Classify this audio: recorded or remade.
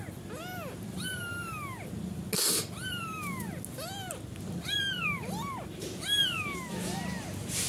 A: recorded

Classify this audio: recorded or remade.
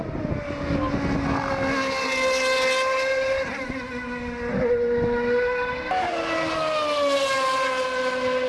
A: recorded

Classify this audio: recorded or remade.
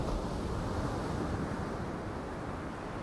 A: recorded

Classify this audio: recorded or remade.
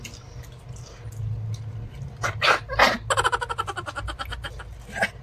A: recorded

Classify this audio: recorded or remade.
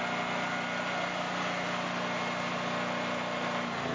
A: recorded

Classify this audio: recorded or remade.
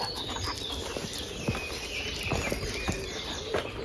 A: recorded